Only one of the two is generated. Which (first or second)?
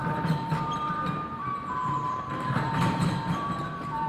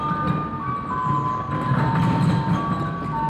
first